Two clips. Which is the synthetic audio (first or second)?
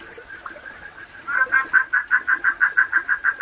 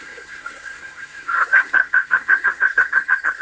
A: second